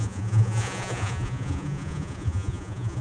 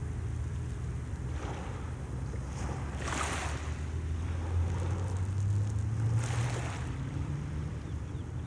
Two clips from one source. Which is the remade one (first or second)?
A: first